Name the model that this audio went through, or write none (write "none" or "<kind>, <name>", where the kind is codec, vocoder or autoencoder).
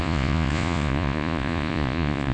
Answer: vocoder, Vocos